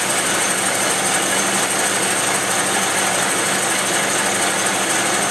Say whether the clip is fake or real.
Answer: real